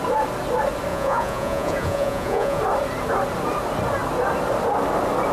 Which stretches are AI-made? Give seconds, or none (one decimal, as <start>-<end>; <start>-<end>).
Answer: 0.9-2.6